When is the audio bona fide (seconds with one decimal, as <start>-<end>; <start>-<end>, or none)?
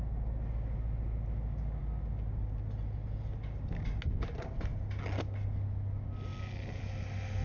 0.0-7.4